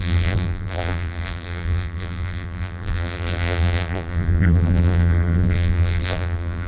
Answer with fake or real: fake